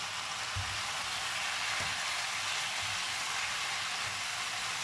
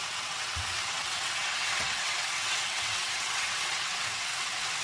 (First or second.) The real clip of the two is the first